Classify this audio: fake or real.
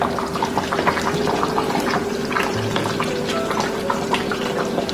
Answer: real